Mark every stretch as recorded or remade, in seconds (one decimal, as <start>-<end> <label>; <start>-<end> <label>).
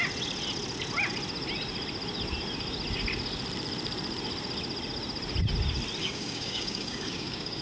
0.0-6.0 recorded; 6.0-7.6 remade